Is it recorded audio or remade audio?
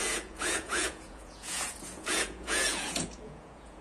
remade